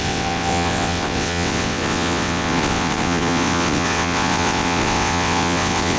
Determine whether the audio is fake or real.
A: fake